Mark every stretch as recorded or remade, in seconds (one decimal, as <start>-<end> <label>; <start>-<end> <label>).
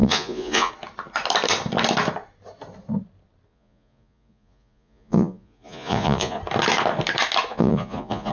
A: 0.0-0.7 remade; 0.7-3.5 recorded; 3.5-6.4 remade; 6.4-7.5 recorded; 7.5-8.3 remade